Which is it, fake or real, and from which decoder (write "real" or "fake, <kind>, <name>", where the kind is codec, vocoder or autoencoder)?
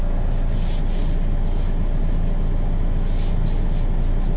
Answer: real